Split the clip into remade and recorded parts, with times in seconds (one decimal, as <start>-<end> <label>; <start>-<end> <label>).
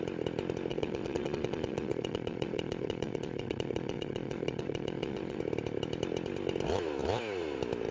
0.0-0.7 recorded; 0.7-5.4 remade; 5.4-7.9 recorded